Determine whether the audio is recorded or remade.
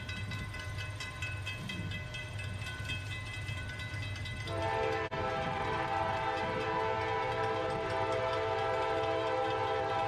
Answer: recorded